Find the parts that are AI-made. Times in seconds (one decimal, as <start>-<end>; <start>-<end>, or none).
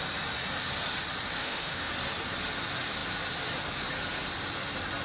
1.4-1.9